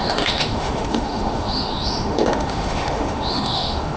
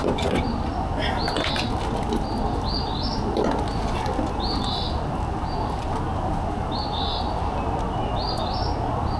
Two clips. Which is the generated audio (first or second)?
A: first